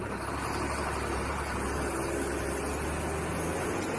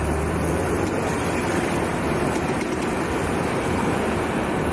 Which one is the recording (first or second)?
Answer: first